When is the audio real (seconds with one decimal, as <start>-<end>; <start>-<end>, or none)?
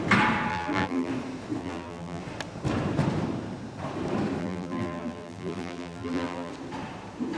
0.0-0.5; 1.1-1.6; 2.2-4.4; 6.5-7.4